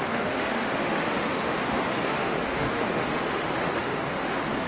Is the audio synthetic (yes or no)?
yes